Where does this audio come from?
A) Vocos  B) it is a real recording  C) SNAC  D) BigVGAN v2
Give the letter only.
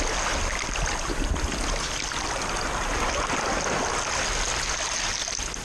B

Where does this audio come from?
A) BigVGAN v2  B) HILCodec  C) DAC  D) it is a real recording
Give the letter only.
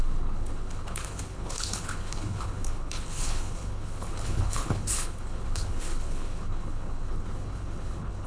B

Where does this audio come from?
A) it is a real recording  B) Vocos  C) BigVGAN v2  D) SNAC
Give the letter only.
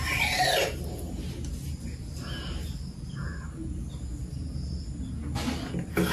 A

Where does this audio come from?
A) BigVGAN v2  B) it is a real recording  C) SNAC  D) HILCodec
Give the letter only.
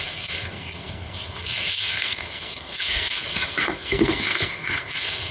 C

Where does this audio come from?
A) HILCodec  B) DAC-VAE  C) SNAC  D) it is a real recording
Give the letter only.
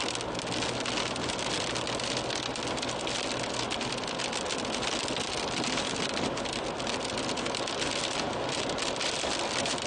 D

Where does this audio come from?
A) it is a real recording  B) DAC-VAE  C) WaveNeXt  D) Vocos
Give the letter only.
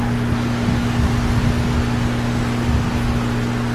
A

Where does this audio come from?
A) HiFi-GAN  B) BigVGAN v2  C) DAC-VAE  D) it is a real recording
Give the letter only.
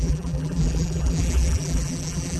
B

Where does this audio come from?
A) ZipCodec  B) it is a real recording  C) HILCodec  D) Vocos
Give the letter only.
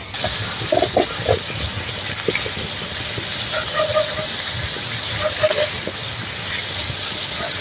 B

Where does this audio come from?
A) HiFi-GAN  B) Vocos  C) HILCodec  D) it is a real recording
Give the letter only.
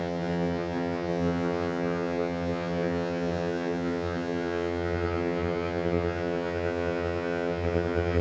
A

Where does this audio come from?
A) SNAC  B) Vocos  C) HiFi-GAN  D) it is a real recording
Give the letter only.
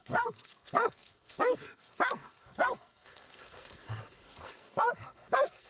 A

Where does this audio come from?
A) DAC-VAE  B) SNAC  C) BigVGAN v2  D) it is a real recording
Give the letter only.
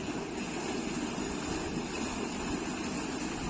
D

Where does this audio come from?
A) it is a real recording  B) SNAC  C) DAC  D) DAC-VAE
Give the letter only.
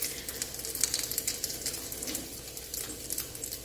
A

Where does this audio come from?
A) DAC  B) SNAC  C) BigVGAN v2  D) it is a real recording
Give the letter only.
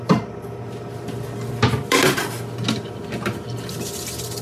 D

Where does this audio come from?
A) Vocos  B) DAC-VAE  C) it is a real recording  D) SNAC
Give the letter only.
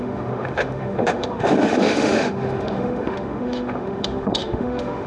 B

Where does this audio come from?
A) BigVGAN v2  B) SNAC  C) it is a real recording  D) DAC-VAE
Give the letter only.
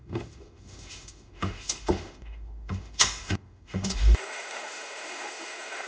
D